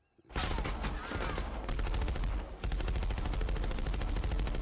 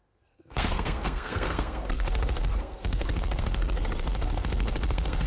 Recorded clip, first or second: first